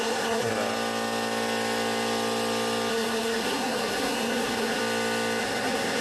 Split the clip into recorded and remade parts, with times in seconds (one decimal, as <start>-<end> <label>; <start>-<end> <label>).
0.0-0.5 remade; 0.5-2.9 recorded; 2.9-4.8 remade; 4.8-5.4 recorded; 5.4-6.0 remade